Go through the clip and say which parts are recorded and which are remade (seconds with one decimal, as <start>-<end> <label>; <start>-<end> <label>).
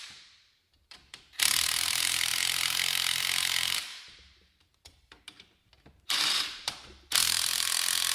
0.0-8.1 remade